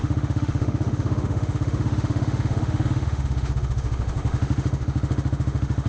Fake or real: fake